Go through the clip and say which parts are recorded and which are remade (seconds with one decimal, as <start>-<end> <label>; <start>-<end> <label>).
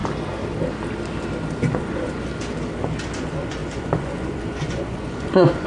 0.0-1.7 recorded; 1.7-2.3 remade; 2.3-3.2 recorded; 3.2-5.7 remade